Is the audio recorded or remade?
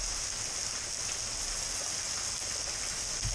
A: recorded